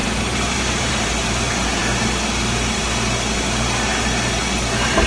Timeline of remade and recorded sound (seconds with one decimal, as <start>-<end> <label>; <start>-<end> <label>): 0.0-1.8 remade; 1.8-5.1 recorded